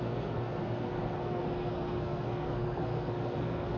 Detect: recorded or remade remade